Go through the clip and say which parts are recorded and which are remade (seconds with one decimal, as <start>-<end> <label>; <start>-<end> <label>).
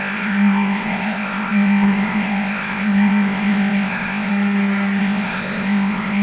0.0-4.3 remade; 4.3-5.0 recorded; 5.0-6.2 remade